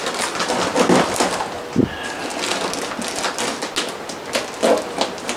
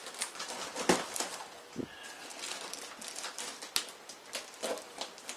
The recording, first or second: first